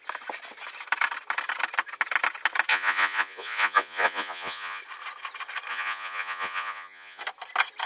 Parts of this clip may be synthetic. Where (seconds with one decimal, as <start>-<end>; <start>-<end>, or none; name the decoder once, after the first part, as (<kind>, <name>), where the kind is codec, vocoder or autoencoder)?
2.7-4.8 (vocoder, Vocos); 5.7-7.2